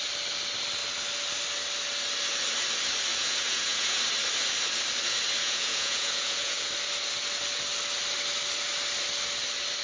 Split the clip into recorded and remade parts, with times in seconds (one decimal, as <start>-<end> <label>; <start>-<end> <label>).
0.0-3.1 recorded; 3.1-4.0 remade; 4.0-5.4 recorded; 5.4-6.7 remade; 6.7-9.8 recorded